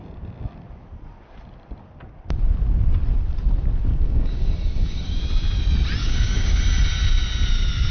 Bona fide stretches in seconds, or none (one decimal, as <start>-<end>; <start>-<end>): 0.0-3.9; 5.2-6.0; 6.6-7.9